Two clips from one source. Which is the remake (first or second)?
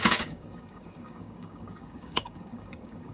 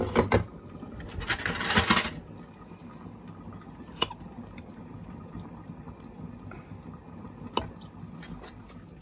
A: first